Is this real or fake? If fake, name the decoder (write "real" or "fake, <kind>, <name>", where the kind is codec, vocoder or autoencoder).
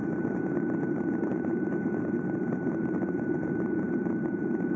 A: fake, vocoder, BigVGAN v2